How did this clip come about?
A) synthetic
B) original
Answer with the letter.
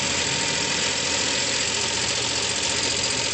B